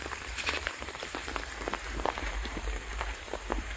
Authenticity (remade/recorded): remade